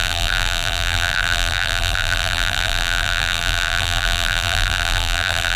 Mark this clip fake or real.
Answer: fake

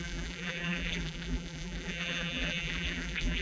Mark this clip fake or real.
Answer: fake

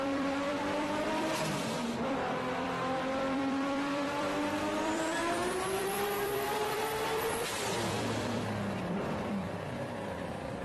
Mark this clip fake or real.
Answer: fake